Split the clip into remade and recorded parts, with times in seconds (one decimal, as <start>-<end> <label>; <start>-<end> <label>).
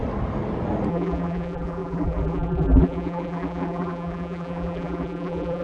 0.0-0.9 recorded; 0.9-5.6 remade